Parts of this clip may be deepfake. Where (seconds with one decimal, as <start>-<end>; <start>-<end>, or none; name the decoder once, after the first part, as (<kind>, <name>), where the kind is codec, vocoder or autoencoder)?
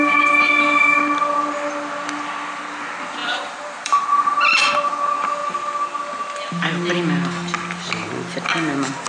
3.2-4.9 (vocoder, BigVGAN v2)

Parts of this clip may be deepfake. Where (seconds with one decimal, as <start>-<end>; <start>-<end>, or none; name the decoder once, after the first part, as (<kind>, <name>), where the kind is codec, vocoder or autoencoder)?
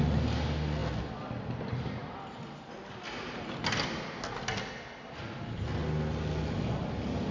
none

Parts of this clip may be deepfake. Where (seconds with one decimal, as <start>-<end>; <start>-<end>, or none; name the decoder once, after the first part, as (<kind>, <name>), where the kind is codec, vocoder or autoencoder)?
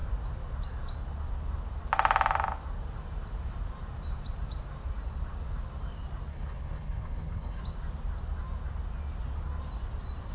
6.3-7.6 (codec, HILCodec)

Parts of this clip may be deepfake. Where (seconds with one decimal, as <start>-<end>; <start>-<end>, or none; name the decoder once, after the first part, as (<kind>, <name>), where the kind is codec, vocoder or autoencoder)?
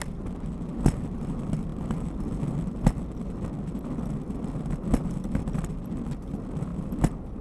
6.7-7.4 (vocoder, BigVGAN v2)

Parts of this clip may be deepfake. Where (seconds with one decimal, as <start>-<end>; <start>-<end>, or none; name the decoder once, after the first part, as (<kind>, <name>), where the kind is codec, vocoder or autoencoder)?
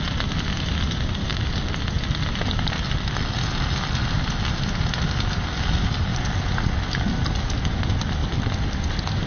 1.3-3.3 (vocoder, BigVGAN v2); 8.2-9.3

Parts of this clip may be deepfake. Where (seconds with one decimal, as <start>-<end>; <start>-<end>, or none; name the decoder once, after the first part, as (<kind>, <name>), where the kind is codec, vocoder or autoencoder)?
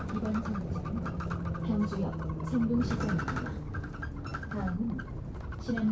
none